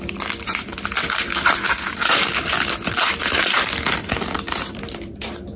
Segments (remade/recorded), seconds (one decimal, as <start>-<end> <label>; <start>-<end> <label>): 0.0-3.2 recorded; 3.2-3.7 remade; 3.7-5.6 recorded